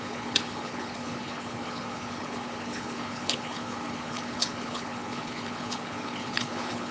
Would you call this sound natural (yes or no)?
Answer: no